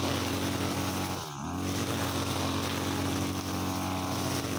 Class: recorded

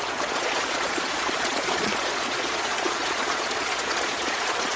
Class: remade